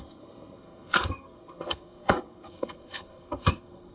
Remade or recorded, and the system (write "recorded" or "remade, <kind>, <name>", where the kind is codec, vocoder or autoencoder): remade, codec, SNAC